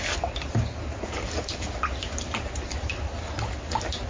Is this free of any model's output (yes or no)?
yes